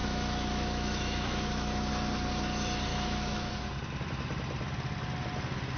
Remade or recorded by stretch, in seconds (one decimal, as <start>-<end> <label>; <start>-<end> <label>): 0.0-1.9 remade; 1.9-2.9 recorded; 2.9-3.5 remade; 3.5-5.8 recorded